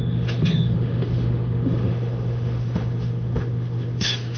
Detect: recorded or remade remade